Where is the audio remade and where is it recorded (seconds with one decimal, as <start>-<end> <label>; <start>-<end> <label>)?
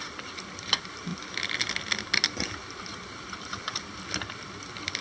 0.0-5.0 recorded